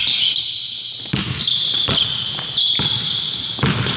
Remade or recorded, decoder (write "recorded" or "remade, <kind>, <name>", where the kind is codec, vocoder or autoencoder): recorded